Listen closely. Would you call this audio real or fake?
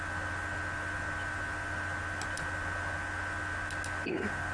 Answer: real